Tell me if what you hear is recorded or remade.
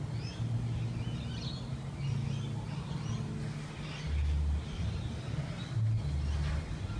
recorded